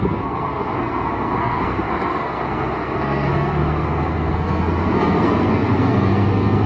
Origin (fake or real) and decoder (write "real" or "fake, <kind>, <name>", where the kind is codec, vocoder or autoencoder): fake, codec, SNAC